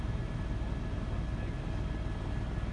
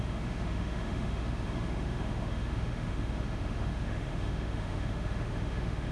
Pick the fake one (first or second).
second